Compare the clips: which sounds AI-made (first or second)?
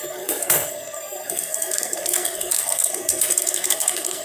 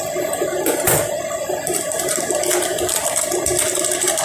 first